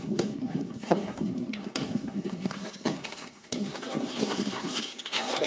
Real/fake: fake